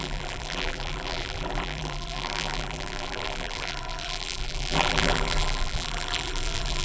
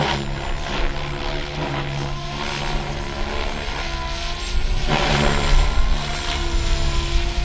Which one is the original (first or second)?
second